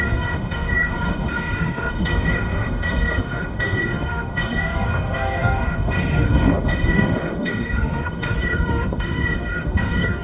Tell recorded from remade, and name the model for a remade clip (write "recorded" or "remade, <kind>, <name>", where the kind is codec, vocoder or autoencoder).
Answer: remade, autoencoder, DAC-VAE